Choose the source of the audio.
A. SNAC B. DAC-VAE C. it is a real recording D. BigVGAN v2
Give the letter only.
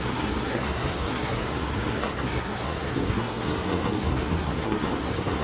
A